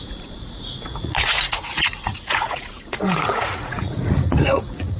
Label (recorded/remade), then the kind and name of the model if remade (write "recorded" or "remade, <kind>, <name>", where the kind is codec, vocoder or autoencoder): remade, vocoder, Vocos